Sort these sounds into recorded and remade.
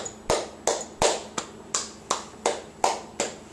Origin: recorded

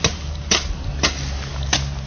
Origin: recorded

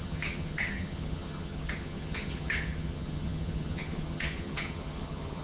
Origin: remade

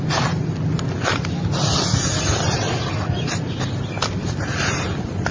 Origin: recorded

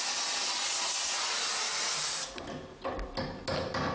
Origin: recorded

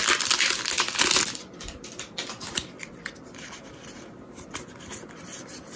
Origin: recorded